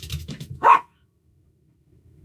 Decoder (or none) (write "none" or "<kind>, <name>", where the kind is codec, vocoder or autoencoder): autoencoder, DAC-VAE